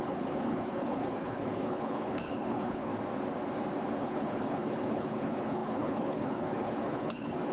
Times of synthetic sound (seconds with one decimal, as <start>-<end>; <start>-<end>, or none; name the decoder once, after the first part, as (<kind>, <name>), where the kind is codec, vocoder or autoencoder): 0.0-2.9 (codec, HILCodec); 3.9-7.5